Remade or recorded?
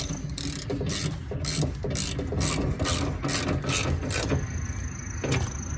recorded